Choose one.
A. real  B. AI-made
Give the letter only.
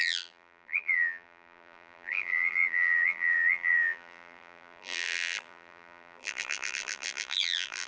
B